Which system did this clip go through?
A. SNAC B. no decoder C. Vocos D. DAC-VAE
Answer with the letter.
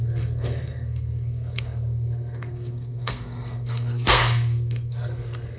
A